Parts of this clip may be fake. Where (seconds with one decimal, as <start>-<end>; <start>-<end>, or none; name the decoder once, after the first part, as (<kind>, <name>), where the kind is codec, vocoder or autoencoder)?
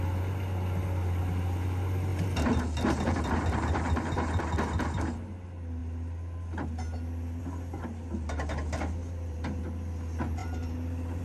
2.1-4.4 (vocoder, BigVGAN v2); 9.0-9.6; 10.4-11.2